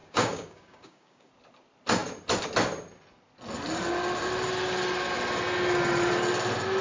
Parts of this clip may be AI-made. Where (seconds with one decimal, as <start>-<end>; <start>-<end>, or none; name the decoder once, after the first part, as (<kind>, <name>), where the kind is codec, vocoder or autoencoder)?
0.0-1.3 (codec, DAC)